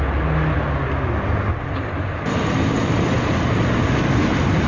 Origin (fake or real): real